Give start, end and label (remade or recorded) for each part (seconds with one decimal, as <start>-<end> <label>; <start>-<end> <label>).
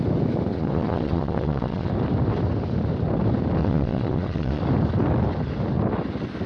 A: 0.0-0.5 recorded; 0.5-1.9 remade; 1.9-3.6 recorded; 3.6-4.6 remade; 4.6-6.5 recorded